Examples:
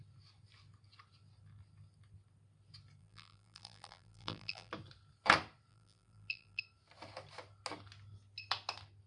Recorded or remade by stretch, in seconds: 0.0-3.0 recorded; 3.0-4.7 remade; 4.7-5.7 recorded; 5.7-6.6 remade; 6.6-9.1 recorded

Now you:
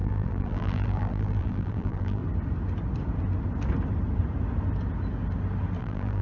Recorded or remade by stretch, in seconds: 0.0-2.2 remade; 2.2-5.8 recorded; 5.8-6.2 remade

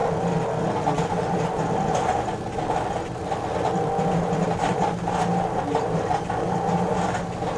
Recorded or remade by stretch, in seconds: 0.0-1.1 recorded; 1.1-2.1 remade; 2.1-4.2 recorded; 4.2-7.6 remade

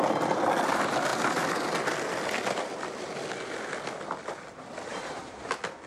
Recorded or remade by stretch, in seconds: 0.0-4.9 recorded; 4.9-5.5 remade; 5.5-5.9 recorded

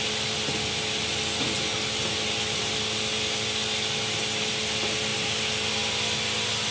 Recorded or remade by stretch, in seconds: 0.0-6.7 recorded

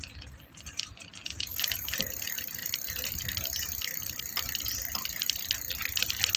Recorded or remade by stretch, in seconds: 0.0-6.4 recorded